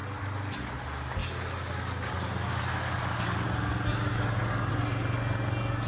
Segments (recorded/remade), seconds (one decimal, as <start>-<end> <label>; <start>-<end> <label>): 0.0-5.9 recorded

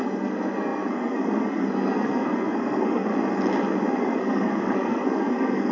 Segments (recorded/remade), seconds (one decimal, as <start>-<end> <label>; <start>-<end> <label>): 0.0-3.1 remade; 3.1-4.0 recorded; 4.0-5.7 remade

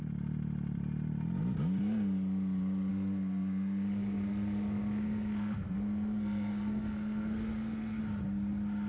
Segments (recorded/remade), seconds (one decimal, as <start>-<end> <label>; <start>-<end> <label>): 0.0-2.9 recorded; 2.9-8.0 remade; 8.0-8.9 recorded

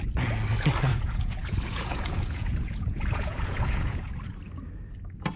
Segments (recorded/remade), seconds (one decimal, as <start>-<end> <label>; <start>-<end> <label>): 0.0-0.9 recorded; 0.9-4.1 remade; 4.1-5.4 recorded

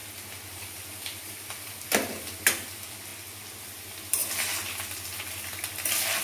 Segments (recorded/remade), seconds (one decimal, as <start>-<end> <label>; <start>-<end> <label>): 0.0-0.7 recorded; 0.7-3.1 remade; 3.1-3.6 recorded; 3.6-4.2 remade; 4.2-6.2 recorded

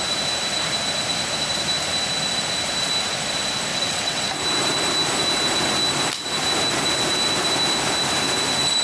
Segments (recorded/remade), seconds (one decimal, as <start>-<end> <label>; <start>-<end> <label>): 0.0-3.7 recorded; 3.7-4.3 remade; 4.3-8.8 recorded